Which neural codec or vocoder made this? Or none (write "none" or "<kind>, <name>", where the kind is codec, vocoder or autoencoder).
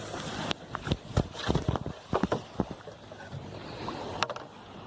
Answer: none